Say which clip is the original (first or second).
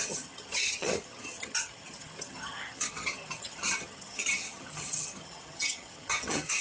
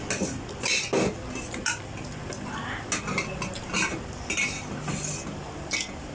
second